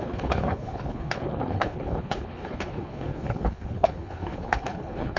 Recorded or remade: remade